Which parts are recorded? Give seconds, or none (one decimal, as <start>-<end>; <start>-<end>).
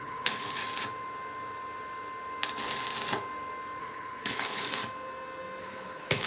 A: 0.6-3.8; 4.8-5.6